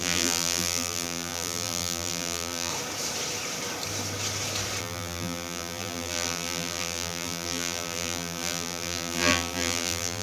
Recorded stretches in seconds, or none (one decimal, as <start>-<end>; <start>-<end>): 2.7-4.8